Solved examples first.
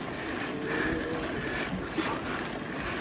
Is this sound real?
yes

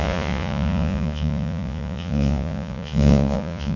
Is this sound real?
no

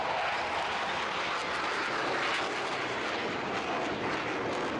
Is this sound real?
yes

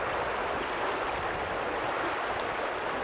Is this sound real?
yes